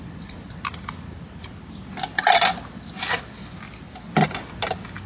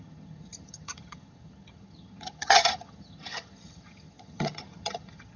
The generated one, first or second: second